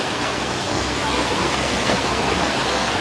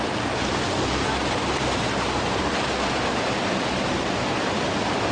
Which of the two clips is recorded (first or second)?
second